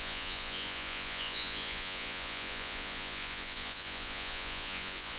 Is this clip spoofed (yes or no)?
yes